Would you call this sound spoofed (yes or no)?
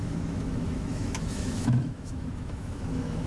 yes